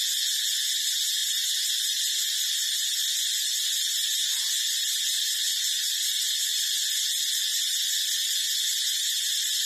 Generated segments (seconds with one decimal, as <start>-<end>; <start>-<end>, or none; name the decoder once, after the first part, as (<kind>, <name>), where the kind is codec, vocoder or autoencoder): none